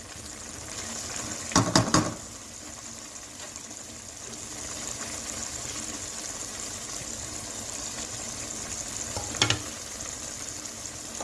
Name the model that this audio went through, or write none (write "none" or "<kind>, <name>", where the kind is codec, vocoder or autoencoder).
none